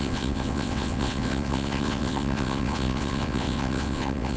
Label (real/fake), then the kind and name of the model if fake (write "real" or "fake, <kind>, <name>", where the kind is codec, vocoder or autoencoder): fake, vocoder, WaveNeXt